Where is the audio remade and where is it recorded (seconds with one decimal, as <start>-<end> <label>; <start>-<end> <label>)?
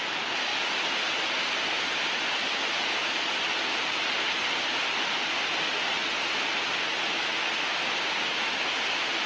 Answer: 0.0-9.3 recorded